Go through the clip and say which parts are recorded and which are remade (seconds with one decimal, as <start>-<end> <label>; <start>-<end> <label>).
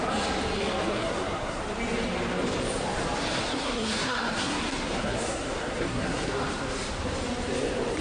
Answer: 0.0-0.9 recorded; 0.9-1.6 remade; 1.6-3.4 recorded; 3.4-6.3 remade; 6.3-8.0 recorded